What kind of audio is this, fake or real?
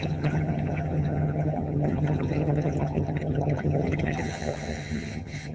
fake